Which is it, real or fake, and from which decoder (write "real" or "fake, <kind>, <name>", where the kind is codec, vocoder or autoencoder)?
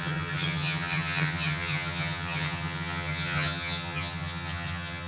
fake, vocoder, HiFi-GAN